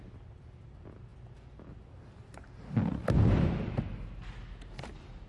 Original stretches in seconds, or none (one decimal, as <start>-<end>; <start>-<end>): 0.0-1.1; 4.3-5.3